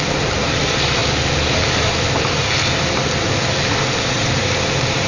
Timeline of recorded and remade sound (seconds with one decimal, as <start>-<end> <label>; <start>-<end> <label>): 0.0-1.0 remade; 1.0-4.0 recorded; 4.0-5.1 remade